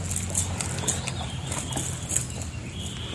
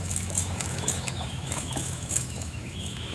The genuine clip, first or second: first